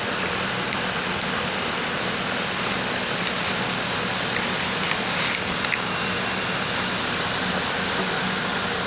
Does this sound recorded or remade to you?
recorded